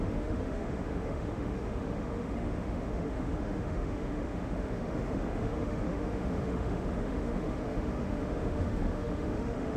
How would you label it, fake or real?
fake